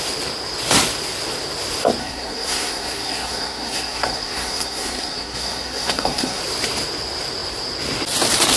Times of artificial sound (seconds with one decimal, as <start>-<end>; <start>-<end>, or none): 2.0-6.4